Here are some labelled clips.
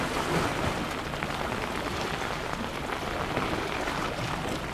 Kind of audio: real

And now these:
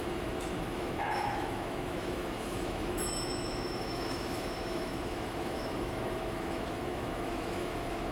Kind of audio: fake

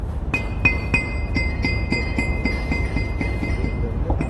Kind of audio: real